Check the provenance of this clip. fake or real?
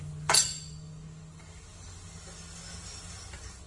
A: real